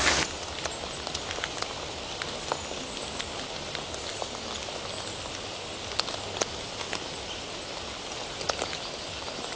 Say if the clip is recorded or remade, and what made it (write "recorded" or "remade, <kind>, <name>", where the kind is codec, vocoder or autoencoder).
recorded